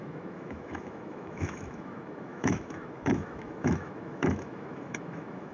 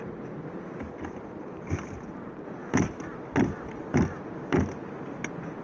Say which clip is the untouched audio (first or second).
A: second